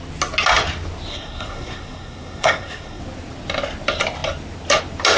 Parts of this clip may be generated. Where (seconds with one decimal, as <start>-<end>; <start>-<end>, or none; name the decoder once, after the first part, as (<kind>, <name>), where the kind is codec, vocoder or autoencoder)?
1.1-3.0 (codec, SNAC)